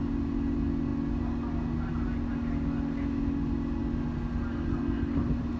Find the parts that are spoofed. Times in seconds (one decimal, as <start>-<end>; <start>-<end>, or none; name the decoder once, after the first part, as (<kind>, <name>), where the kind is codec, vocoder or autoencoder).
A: none

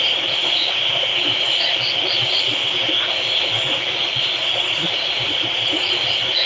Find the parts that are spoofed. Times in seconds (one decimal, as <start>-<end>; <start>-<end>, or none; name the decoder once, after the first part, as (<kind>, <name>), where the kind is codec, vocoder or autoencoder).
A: none

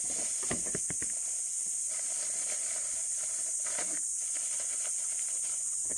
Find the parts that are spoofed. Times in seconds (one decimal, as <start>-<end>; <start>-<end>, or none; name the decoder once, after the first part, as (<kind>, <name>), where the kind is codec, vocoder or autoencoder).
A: none

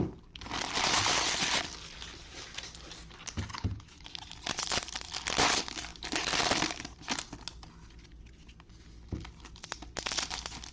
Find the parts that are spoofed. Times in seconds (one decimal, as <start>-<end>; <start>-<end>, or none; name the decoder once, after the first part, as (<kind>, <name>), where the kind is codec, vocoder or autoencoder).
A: 3.5-4.1 (codec, HILCodec)

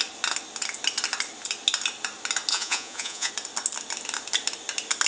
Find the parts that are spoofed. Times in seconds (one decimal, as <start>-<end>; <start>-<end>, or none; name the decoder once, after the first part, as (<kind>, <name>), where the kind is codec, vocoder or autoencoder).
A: 2.5-3.3 (vocoder, Vocos)

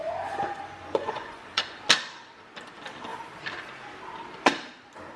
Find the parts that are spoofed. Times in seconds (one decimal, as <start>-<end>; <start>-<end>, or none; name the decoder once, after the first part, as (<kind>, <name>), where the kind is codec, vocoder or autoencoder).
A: 0.0-1.8 (vocoder, Vocos)

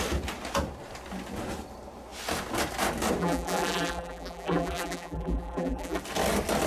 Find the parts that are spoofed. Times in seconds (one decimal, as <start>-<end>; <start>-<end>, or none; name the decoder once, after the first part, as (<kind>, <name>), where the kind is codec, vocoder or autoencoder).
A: 3.2-6.0 (vocoder, BigVGAN v2)

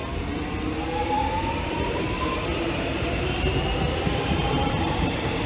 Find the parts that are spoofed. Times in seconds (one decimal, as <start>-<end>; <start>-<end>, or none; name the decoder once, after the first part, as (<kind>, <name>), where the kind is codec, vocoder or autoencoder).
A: 1.6-5.5 (vocoder, BigVGAN v2)